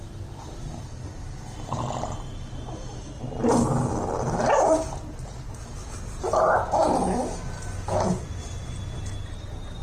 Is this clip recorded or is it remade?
recorded